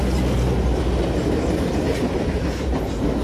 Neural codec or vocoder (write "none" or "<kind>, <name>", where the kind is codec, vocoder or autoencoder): none